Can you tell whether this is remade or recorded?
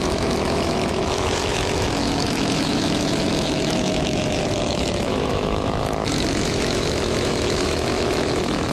remade